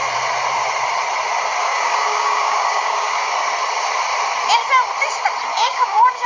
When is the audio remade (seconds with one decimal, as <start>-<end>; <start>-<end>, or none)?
1.6-3.3; 5.5-6.3